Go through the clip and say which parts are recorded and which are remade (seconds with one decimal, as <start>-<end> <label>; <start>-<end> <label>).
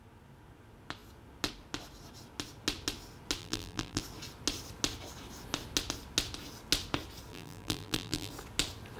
0.0-3.4 recorded; 3.4-4.0 remade; 4.0-7.3 recorded; 7.3-8.3 remade; 8.3-9.0 recorded